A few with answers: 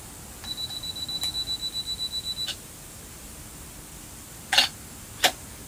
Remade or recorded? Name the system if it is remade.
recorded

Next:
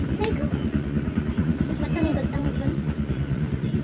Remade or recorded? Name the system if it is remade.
remade, vocoder, Vocos